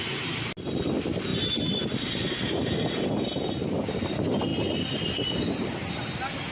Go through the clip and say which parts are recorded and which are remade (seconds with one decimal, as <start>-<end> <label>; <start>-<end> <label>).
0.0-6.5 recorded